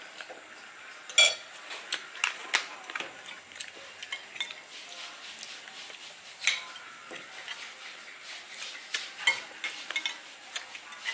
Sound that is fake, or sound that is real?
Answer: real